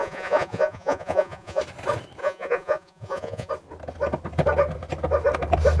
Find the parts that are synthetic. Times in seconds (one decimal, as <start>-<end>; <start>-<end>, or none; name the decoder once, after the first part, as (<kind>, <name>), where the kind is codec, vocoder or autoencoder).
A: 0.0-1.6 (vocoder, Vocos); 2.2-3.5